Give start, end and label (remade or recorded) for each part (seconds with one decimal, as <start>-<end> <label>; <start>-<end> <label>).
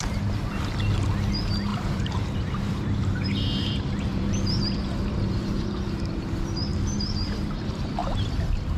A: 0.0-1.7 recorded; 1.7-5.7 remade; 5.7-6.7 recorded; 6.7-7.4 remade; 7.4-8.8 recorded